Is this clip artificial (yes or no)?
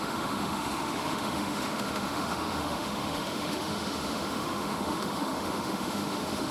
yes